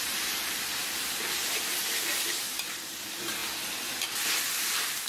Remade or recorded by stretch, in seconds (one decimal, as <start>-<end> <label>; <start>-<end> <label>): 0.0-3.4 remade; 3.4-4.4 recorded; 4.4-5.1 remade